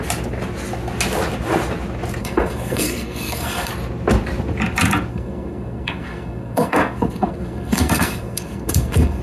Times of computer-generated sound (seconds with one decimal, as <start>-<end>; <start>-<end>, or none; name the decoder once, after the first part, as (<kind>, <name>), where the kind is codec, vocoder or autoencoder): 2.2-3.7 (codec, SNAC); 5.1-9.2